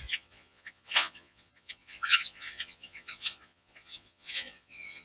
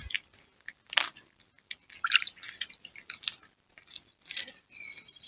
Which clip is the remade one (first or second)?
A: first